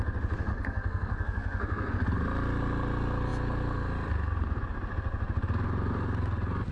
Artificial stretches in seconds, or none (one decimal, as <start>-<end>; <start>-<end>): 0.5-1.9